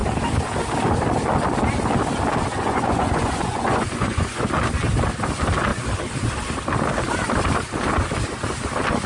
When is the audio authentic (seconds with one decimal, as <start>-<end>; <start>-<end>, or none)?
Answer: 0.0-2.5; 4.5-9.1